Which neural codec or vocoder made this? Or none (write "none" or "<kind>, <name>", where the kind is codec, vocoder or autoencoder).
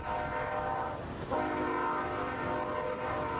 none